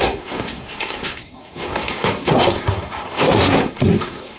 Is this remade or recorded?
remade